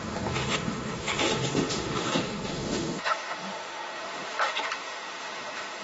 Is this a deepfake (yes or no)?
yes